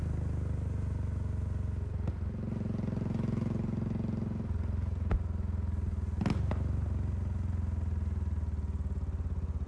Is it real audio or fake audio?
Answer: real